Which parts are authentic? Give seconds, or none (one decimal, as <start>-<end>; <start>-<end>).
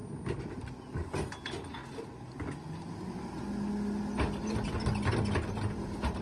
0.0-6.2